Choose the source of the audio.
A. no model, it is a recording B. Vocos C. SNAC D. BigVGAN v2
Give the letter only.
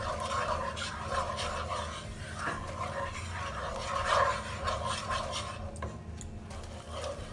A